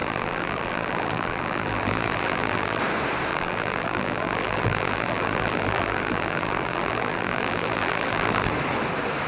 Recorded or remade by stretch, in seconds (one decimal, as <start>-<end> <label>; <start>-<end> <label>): 0.0-2.8 remade; 2.8-3.3 recorded; 3.3-8.5 remade; 8.5-9.3 recorded